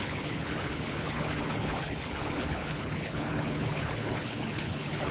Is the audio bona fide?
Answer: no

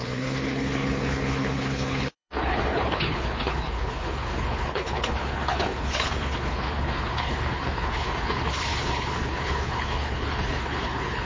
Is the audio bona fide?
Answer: no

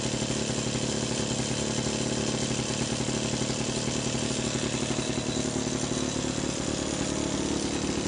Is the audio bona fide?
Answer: yes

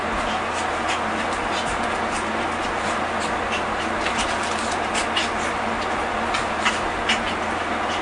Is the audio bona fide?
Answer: yes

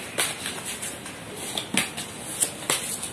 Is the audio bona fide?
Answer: yes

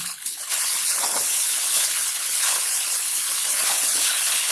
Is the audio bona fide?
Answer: no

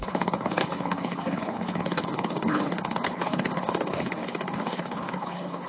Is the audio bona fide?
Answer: no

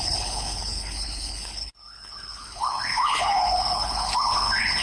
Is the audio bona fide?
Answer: no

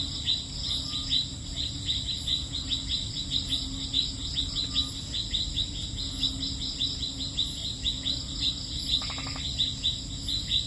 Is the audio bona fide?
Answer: yes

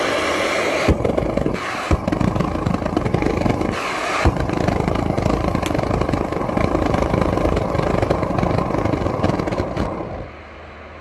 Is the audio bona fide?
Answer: yes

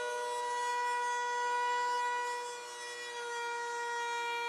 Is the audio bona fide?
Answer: yes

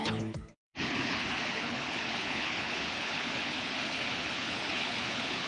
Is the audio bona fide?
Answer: no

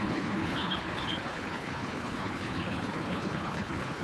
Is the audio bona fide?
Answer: no